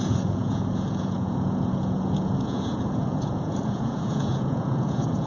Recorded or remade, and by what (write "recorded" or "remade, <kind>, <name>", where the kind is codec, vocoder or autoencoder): remade, vocoder, Vocos